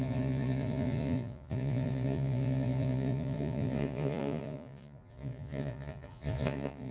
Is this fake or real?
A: fake